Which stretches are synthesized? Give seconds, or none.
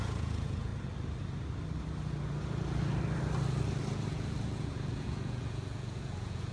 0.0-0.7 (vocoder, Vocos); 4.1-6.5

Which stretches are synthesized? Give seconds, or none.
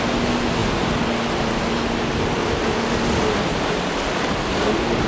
none